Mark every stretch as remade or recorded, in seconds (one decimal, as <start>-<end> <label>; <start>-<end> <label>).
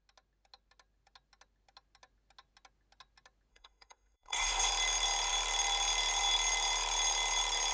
0.0-3.5 recorded; 3.5-4.7 remade; 4.7-7.7 recorded